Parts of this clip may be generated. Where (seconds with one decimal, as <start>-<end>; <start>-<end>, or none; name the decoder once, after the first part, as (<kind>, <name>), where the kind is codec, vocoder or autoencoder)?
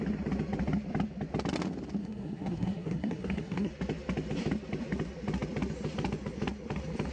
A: 2.0-3.7 (codec, SNAC)